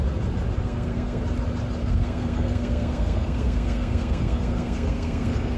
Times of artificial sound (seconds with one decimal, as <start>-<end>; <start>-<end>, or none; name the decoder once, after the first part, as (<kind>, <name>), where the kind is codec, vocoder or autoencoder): 0.6-1.2 (codec, SNAC); 1.8-5.6

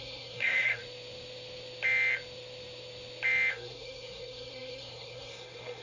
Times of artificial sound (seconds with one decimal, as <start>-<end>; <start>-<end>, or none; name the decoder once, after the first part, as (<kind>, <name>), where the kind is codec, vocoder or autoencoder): 0.0-0.8 (codec, SNAC); 3.5-5.8